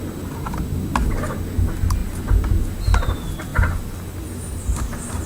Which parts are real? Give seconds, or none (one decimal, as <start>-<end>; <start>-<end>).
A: 0.0-3.5